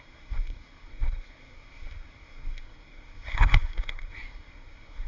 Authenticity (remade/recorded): remade